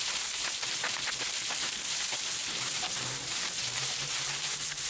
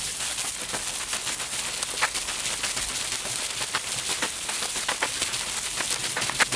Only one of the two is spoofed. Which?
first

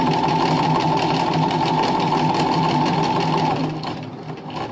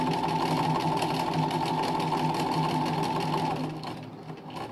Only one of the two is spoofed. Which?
first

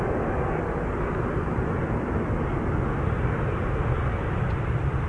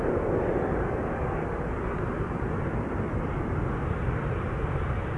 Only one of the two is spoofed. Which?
second